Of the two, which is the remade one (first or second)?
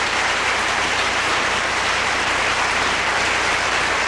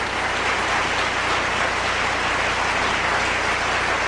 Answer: first